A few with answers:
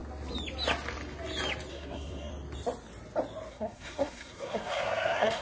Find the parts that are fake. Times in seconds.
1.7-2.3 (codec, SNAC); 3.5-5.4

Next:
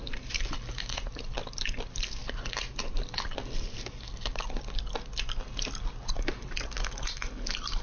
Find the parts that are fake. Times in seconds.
none

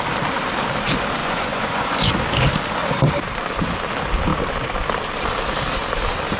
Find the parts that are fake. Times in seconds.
1.2-2.1 (vocoder, Vocos)